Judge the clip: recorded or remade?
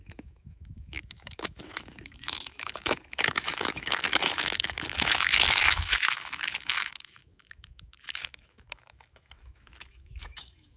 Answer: remade